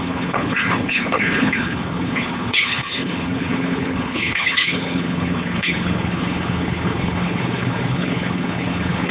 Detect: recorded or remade remade